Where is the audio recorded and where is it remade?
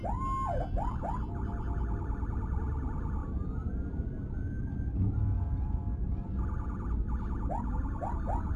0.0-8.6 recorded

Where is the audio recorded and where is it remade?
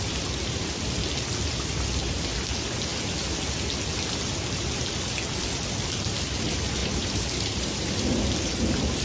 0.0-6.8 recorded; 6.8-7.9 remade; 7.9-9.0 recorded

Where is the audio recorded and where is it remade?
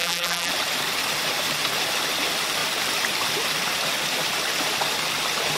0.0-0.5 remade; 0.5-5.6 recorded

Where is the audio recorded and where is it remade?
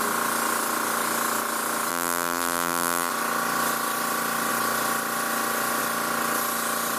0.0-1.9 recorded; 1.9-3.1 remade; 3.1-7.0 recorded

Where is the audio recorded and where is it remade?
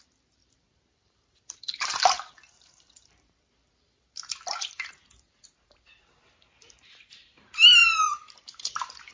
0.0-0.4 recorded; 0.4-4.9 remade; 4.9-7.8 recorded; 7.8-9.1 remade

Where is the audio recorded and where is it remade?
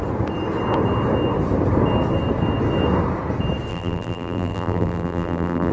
0.0-3.7 recorded; 3.7-5.7 remade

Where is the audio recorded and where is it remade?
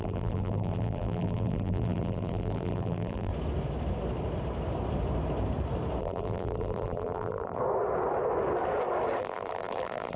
0.0-3.3 remade; 3.3-6.0 recorded; 6.0-7.6 remade; 7.6-9.2 recorded; 9.2-10.2 remade